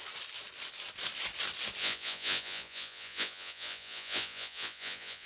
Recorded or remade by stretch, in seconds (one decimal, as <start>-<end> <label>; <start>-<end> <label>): 0.0-1.8 recorded; 1.8-5.3 remade